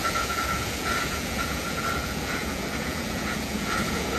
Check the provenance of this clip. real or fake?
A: fake